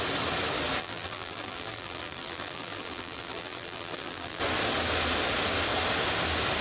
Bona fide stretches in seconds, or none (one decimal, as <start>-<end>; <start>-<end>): 0.0-0.8; 4.4-6.6